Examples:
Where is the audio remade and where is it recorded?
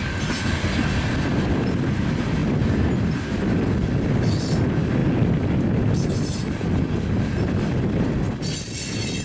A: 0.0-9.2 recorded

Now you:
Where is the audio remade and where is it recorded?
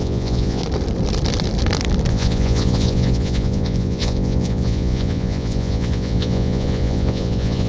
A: 0.0-0.6 remade; 0.6-2.1 recorded; 2.1-7.7 remade